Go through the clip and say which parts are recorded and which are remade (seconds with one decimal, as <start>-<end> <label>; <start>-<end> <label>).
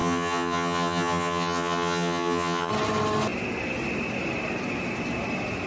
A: 0.0-2.7 remade; 2.7-5.7 recorded